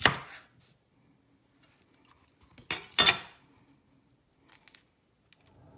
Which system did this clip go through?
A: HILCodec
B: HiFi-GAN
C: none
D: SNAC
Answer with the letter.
C